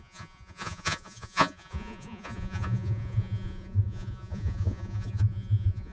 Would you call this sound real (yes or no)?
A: no